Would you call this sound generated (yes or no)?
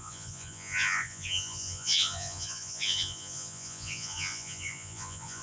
yes